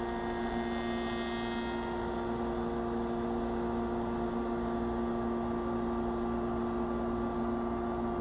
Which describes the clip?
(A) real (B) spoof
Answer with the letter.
A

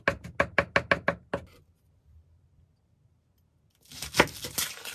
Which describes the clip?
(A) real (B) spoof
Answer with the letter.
A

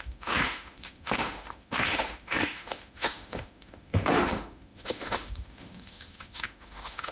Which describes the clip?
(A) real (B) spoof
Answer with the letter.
B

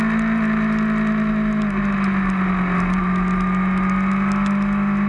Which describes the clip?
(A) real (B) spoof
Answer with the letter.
A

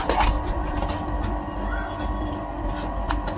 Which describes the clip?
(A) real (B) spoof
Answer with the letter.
A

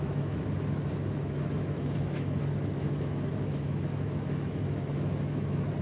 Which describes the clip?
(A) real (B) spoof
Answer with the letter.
B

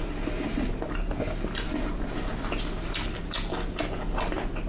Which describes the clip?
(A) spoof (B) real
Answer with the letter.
B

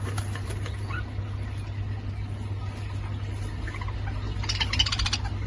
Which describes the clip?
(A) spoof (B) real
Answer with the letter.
B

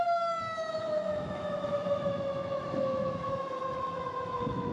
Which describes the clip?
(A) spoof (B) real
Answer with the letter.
A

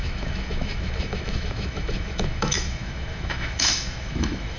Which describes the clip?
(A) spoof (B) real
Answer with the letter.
A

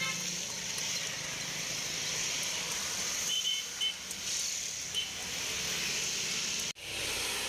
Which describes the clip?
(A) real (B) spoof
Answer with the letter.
A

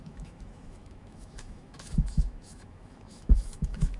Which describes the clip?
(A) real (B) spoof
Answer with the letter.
B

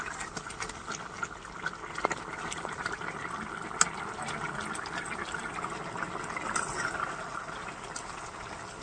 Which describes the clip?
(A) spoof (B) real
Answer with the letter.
B